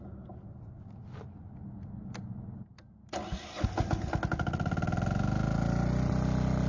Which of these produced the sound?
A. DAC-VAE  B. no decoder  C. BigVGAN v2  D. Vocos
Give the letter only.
B